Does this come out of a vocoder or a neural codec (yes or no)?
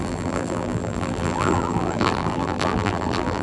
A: yes